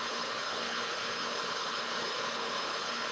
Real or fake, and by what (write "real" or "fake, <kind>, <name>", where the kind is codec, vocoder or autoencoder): fake, codec, HILCodec